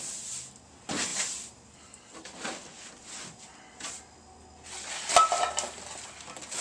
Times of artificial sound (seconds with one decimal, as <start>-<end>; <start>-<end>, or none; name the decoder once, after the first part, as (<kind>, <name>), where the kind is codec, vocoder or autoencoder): none

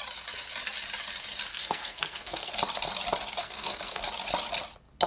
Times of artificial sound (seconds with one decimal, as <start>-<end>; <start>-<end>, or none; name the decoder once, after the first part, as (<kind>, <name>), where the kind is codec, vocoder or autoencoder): 1.5-2.5 (codec, SNAC); 3.4-4.0

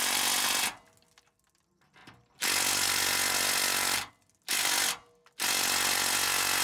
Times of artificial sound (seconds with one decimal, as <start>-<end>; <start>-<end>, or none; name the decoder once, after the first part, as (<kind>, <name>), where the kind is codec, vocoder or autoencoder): none

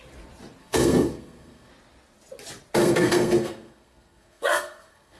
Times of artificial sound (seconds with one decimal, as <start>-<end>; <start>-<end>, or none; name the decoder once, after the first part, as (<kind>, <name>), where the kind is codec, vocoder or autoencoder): 0.6-1.7 (codec, SNAC); 2.8-5.2

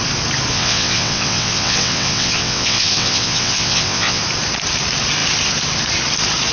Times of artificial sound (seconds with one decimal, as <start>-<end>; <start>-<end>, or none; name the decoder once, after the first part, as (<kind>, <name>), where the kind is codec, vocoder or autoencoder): 0.5-4.2 (vocoder, WaveNeXt)

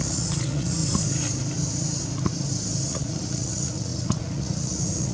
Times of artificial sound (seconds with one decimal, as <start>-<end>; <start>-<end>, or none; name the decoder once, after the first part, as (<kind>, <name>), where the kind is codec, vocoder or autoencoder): 0.0-0.8 (vocoder, Vocos); 2.9-5.1

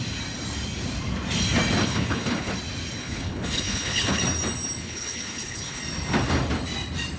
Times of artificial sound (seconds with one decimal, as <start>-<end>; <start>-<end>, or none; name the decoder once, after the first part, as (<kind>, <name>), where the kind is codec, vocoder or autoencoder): 1.8-2.5 (codec, HILCodec); 3.0-4.2; 4.8-5.8

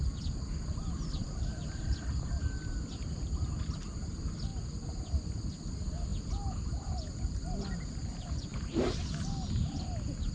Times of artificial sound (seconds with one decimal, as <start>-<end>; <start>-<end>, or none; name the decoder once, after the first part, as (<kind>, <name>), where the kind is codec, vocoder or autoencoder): none